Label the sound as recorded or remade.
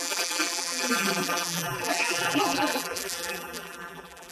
remade